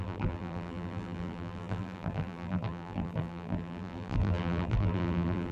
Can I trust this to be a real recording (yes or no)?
no